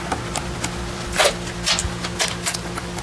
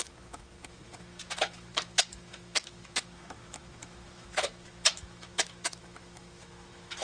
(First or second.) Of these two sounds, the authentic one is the first